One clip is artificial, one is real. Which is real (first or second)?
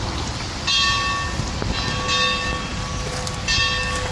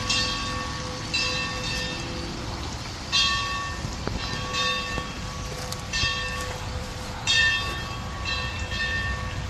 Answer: first